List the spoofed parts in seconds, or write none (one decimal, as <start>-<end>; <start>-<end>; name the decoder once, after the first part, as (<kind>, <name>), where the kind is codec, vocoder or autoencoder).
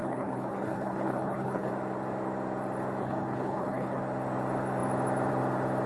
0.0-1.7 (codec, HILCodec); 3.0-4.0